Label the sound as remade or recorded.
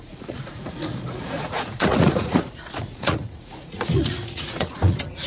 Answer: remade